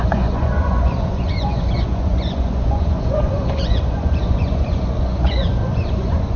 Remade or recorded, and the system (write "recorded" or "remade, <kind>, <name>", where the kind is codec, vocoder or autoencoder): remade, vocoder, Vocos